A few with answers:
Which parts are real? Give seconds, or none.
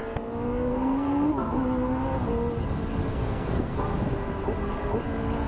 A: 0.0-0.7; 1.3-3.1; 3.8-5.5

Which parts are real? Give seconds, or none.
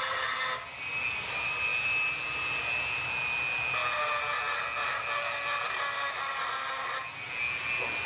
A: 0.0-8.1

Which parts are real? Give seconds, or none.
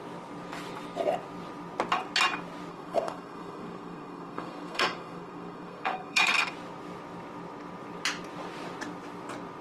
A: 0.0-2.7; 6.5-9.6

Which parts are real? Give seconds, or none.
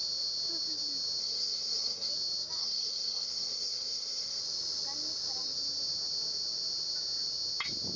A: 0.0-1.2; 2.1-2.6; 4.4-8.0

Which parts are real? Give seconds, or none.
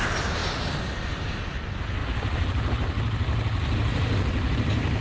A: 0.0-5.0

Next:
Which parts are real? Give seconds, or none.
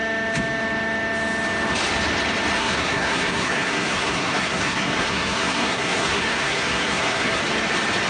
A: 0.0-2.6; 7.4-8.1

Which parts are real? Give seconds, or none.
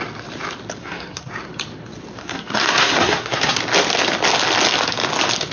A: 0.0-0.8; 1.3-2.2; 3.6-5.5